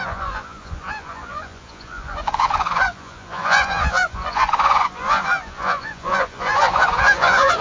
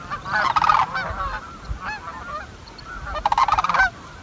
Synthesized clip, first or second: first